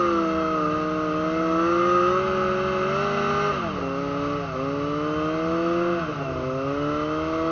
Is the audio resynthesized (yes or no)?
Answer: no